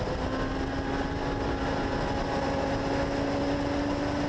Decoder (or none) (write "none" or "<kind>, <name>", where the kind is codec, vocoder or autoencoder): none